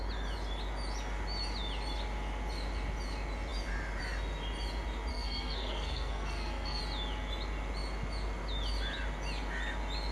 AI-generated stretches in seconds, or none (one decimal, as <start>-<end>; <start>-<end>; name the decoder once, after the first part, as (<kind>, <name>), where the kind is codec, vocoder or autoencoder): 5.1-6.8 (codec, SNAC)

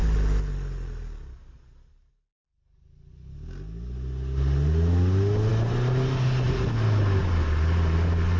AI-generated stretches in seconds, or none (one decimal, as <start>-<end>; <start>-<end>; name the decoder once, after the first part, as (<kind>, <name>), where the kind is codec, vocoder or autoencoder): none

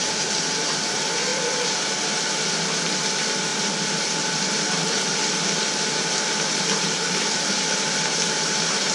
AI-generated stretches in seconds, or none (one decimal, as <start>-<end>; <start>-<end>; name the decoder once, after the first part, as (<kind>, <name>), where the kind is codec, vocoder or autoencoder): none